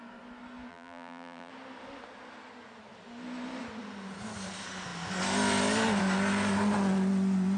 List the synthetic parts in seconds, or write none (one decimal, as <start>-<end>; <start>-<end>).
0.7-1.5